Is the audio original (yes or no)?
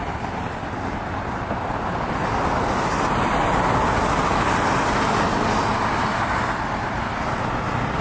yes